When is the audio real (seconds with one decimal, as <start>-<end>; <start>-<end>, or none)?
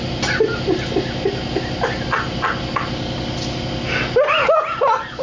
0.0-5.2